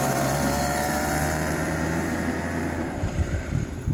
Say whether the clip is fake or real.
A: fake